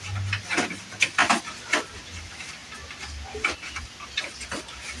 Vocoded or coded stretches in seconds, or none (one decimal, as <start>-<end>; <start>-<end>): none